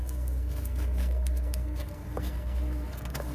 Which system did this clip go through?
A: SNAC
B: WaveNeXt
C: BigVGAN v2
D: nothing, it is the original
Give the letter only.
A